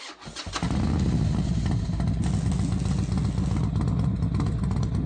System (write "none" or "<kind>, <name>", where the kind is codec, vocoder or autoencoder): none